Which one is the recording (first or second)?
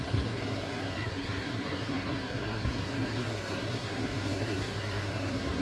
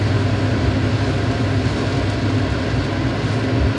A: second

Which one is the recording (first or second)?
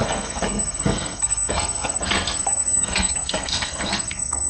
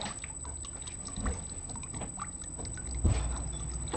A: second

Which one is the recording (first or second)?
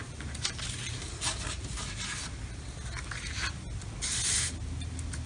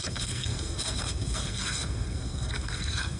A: first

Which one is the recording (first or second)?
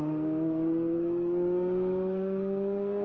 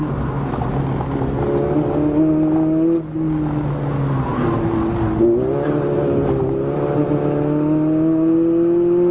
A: second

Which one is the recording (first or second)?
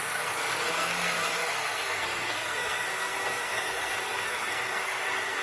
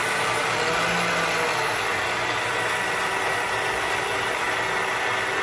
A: second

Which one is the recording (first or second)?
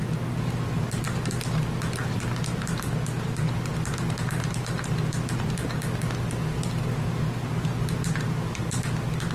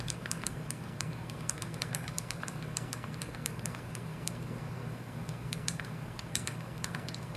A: first